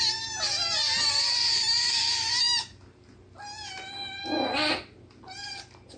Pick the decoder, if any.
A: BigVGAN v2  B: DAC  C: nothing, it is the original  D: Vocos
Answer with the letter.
C